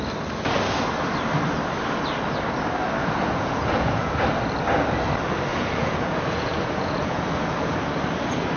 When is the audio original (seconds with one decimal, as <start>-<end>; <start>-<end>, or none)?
0.0-3.0; 4.2-5.5; 7.8-8.6

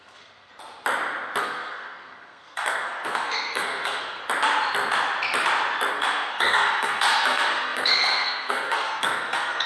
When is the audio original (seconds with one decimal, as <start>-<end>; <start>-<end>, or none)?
0.5-1.4; 4.2-5.9

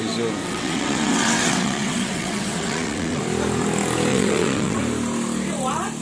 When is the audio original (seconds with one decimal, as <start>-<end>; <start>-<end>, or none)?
0.0-0.4; 3.2-4.1; 4.8-6.0

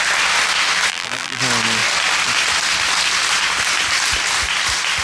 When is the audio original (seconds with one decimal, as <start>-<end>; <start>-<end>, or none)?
0.0-0.9; 1.4-5.0